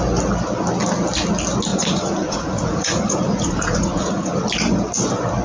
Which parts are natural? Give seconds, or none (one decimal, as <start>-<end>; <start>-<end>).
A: 0.0-1.7; 4.4-5.4